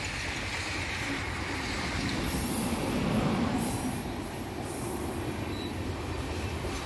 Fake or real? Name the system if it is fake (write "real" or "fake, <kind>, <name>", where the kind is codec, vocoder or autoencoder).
real